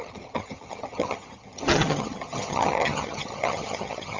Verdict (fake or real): fake